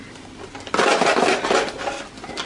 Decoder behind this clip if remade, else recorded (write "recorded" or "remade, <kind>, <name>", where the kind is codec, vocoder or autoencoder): recorded